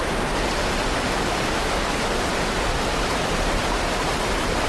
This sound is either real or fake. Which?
fake